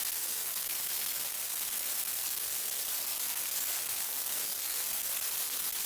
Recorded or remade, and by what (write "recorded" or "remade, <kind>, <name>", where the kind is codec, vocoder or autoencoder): remade, codec, SNAC